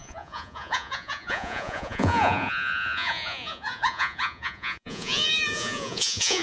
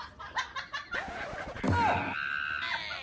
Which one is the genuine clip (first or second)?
second